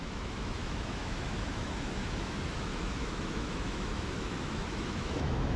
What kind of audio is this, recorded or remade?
remade